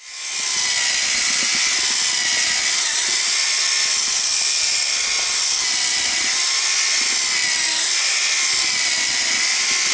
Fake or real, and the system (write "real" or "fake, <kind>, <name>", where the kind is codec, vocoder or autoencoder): real